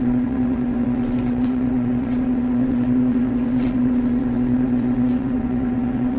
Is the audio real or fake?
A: fake